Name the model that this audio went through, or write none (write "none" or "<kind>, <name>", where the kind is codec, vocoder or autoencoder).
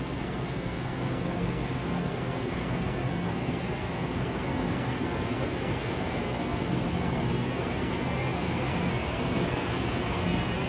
codec, SNAC